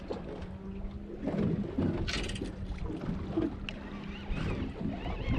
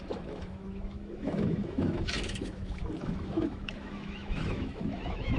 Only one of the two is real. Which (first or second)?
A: first